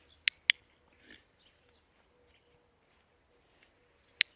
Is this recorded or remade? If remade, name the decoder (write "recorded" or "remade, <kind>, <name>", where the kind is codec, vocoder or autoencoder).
recorded